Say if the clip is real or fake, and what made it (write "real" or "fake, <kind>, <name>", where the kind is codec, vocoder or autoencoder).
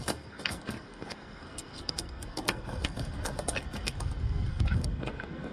fake, codec, SNAC